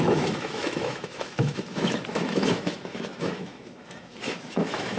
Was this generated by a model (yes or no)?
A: yes